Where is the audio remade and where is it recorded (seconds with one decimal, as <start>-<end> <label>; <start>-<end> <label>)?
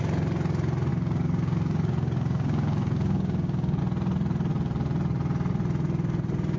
0.0-0.9 recorded; 0.9-3.8 remade; 3.8-6.6 recorded